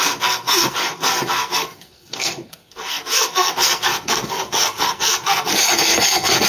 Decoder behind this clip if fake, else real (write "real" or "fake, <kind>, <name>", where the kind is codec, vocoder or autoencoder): fake, codec, SNAC